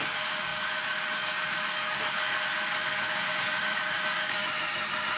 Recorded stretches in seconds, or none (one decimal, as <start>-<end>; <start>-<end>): 4.4-5.2